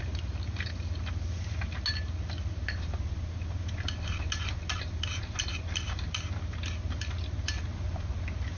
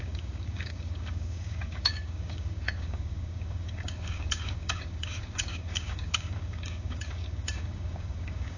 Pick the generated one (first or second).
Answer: second